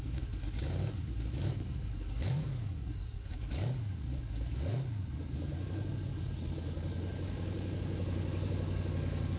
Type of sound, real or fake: fake